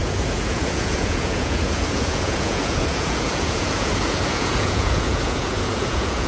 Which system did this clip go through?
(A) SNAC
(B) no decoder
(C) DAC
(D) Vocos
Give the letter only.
D